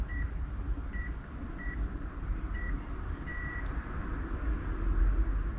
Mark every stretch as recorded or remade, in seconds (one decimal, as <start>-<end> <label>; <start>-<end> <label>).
0.0-5.6 recorded